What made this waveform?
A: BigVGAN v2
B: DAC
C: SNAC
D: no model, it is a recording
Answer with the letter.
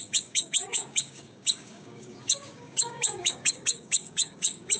B